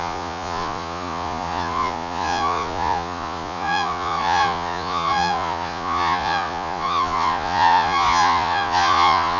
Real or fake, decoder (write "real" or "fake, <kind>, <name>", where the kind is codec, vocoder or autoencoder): fake, vocoder, Vocos